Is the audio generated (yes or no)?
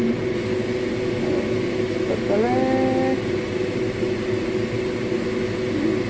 no